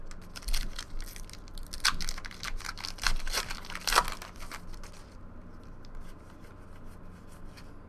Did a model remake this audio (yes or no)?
no